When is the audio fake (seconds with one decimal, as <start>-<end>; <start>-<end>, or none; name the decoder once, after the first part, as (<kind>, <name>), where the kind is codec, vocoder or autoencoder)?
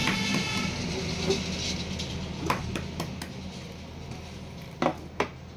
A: none